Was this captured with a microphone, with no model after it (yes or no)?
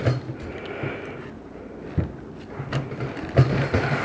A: yes